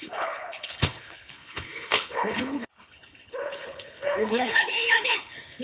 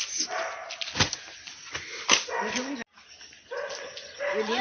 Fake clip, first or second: first